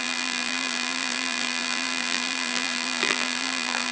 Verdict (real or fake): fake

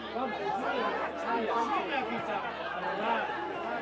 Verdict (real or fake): real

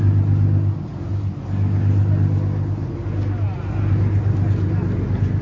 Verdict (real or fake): real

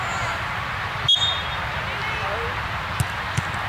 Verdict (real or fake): real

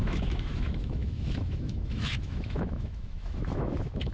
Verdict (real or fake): fake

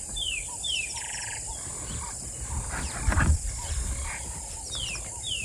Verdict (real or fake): fake